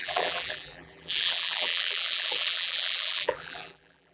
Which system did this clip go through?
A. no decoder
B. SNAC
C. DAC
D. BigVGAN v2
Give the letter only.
D